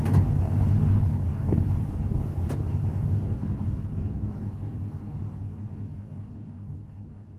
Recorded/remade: remade